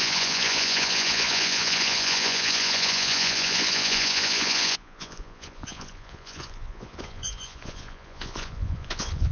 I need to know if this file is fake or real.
fake